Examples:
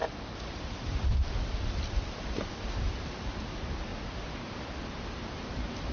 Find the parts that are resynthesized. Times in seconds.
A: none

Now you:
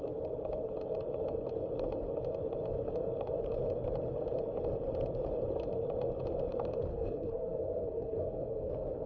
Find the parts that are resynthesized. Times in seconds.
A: 6.9-8.7 (codec, SNAC)

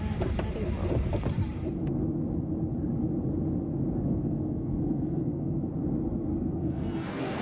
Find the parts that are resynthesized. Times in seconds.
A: 4.0-5.6 (codec, SNAC); 6.3-7.4

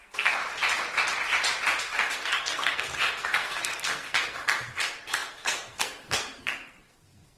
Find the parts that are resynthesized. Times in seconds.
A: 0.0-0.4 (codec, SNAC); 1.8-7.4